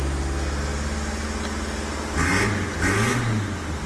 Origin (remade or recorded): recorded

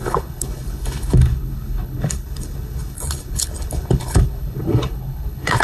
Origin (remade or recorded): remade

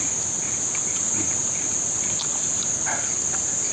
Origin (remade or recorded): recorded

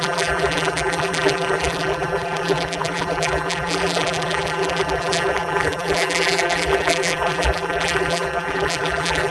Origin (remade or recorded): remade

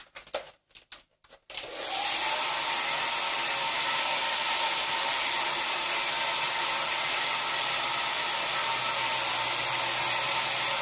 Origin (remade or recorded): recorded